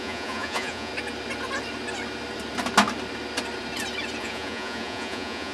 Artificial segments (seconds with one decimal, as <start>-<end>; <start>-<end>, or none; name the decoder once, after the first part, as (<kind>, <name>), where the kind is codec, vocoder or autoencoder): 0.0-0.9 (vocoder, Vocos); 4.2-5.5